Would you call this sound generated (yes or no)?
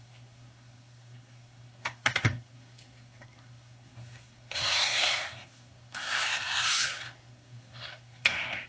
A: yes